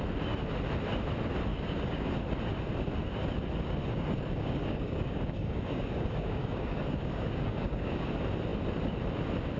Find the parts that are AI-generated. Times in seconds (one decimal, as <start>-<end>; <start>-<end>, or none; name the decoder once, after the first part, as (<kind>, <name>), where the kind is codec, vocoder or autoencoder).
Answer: 1.5-2.1 (codec, DAC); 3.9-8.1